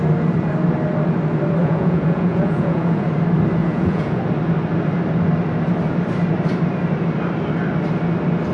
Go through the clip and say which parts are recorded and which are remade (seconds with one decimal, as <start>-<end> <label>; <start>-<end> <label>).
0.0-1.6 recorded; 1.6-3.1 remade; 3.1-3.6 recorded; 3.6-4.2 remade; 4.2-8.5 recorded